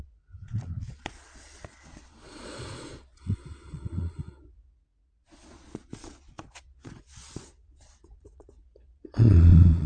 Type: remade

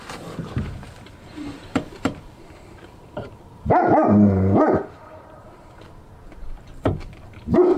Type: remade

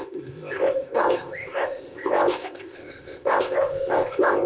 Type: remade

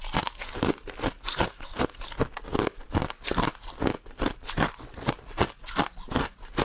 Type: recorded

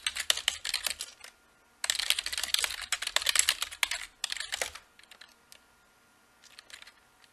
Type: recorded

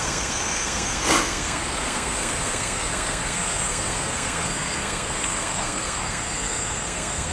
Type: remade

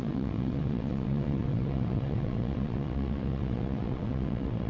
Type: remade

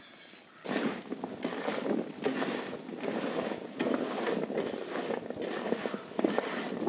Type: recorded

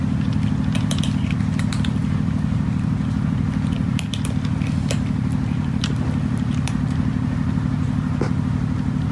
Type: recorded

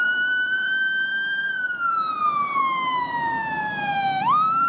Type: remade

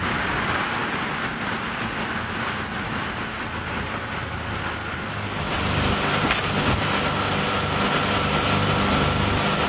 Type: recorded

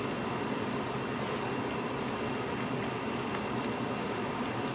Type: recorded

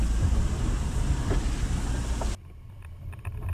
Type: recorded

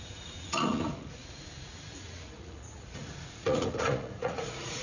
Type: remade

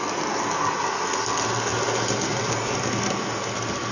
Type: recorded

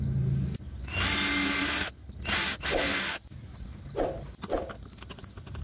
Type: recorded